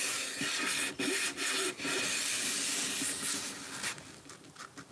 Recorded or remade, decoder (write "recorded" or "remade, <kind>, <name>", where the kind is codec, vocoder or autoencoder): recorded